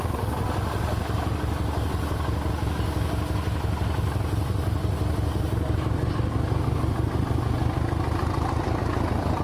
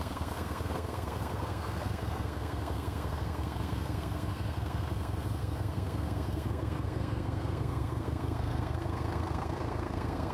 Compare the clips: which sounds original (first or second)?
first